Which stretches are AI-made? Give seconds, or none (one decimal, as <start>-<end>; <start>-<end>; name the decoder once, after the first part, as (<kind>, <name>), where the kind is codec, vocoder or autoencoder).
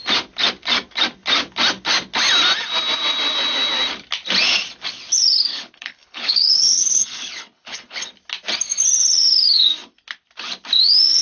5.5-8.1 (codec, HILCodec)